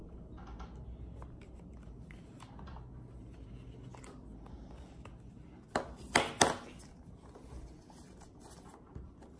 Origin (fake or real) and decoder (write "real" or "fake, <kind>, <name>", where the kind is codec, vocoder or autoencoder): real